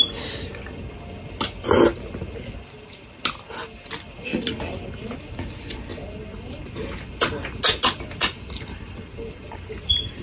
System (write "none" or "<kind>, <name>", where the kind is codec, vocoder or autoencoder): none